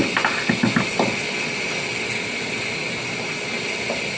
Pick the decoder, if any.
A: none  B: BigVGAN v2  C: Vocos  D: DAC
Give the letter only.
A